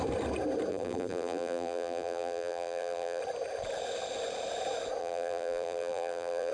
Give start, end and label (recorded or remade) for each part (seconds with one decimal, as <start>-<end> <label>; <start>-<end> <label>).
0.0-0.7 recorded; 0.7-3.2 remade; 3.2-5.0 recorded; 5.0-6.5 remade